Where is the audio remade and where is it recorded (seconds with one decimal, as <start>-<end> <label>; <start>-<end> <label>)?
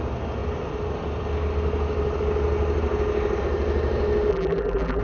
0.0-4.3 recorded; 4.3-5.0 remade